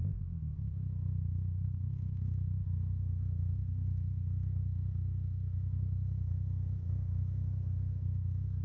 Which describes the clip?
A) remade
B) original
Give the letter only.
A